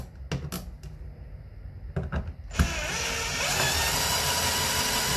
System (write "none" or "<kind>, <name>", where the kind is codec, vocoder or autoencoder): none